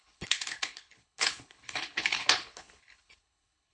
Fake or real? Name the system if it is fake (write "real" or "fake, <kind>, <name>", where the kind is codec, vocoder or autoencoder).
fake, codec, HILCodec